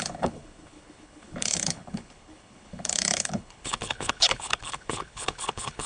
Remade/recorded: remade